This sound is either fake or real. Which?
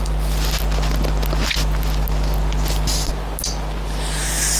real